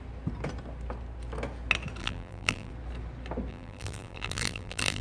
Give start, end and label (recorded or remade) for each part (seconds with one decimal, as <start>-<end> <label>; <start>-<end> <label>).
0.0-2.0 recorded; 2.0-2.7 remade; 2.7-3.5 recorded; 3.5-5.0 remade